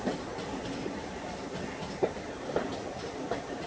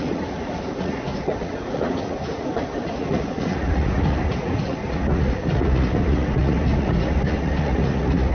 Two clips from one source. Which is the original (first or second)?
first